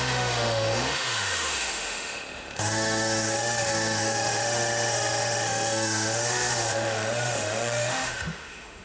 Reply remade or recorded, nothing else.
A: remade